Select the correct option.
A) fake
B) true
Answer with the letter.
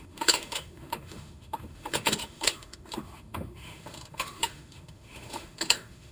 A